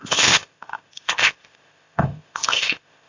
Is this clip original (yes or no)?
no